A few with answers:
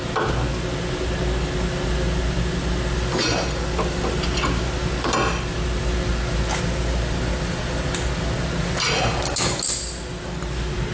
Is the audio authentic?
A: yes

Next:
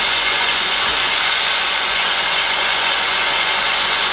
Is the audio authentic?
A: no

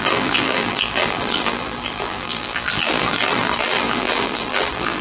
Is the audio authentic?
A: no